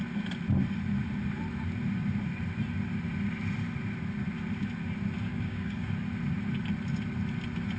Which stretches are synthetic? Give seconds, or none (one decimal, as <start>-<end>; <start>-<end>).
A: 5.3-5.9